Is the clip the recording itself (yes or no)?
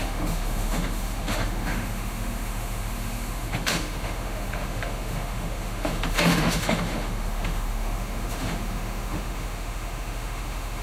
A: no